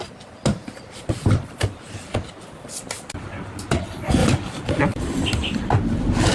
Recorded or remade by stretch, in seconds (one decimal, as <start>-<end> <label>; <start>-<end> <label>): 0.0-0.6 recorded; 0.6-2.1 remade; 2.1-4.2 recorded; 4.2-5.7 remade; 5.7-6.3 recorded